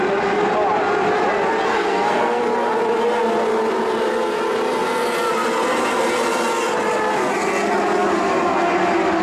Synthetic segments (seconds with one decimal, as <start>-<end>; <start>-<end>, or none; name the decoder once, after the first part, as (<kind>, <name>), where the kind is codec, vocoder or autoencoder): 1.7-2.4 (codec, SNAC)